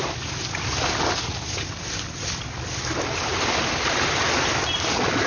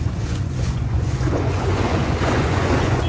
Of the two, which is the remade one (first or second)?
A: second